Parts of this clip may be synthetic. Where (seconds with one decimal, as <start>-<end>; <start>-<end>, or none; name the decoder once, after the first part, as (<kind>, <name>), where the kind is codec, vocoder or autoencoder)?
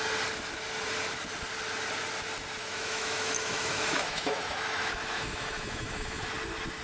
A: 2.6-6.3 (autoencoder, DAC-VAE)